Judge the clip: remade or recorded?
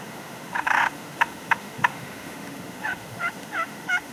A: remade